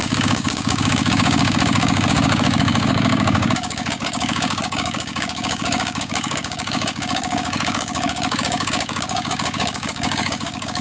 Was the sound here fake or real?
fake